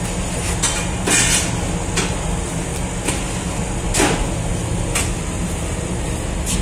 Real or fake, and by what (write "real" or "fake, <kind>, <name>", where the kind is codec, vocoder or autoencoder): real